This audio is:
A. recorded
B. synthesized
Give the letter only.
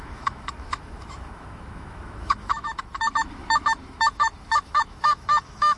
B